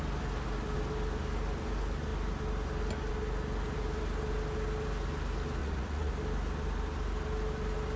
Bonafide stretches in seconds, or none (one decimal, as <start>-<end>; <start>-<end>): 0.0-5.6; 6.1-8.0

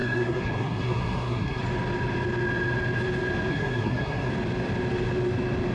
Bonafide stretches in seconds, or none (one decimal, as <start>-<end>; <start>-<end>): 1.6-3.5; 4.3-5.7

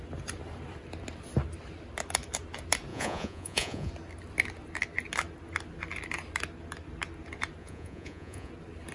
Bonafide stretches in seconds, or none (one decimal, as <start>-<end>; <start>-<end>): 0.0-2.9; 3.9-7.6; 8.5-8.9

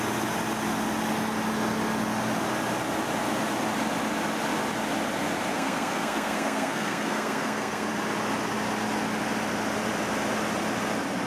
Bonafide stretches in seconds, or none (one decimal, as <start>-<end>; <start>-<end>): 0.0-5.5; 7.9-11.3

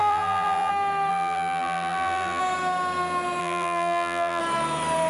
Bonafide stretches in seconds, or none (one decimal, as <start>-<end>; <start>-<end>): 0.7-1.1; 2.4-3.4; 4.4-5.1

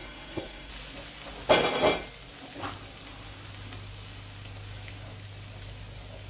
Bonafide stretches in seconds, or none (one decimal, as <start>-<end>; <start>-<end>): 0.7-6.3